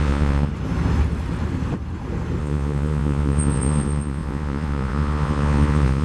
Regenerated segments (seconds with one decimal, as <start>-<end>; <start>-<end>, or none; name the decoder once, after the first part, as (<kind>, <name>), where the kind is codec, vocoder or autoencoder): 0.0-0.5 (vocoder, Vocos); 2.4-6.0